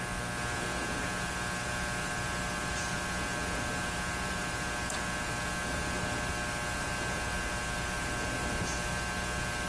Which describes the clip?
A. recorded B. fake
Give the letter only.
A